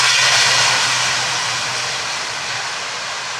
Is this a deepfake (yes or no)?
no